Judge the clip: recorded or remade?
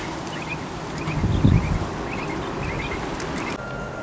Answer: recorded